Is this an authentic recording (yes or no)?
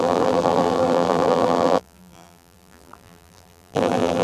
no